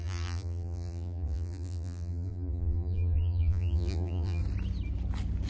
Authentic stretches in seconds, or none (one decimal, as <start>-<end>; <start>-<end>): 4.4-5.5